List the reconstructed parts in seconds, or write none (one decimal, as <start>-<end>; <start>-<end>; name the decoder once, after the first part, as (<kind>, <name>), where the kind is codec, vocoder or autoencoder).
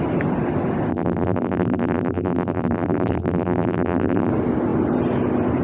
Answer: 0.9-4.3 (vocoder, BigVGAN v2)